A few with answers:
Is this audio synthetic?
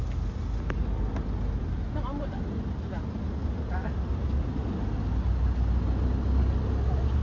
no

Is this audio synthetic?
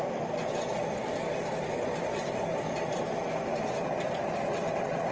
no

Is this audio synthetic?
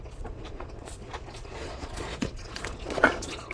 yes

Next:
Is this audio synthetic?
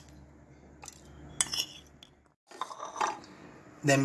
no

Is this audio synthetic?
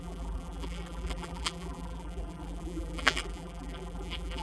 yes